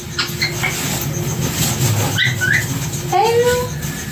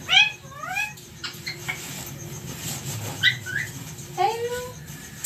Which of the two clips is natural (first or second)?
first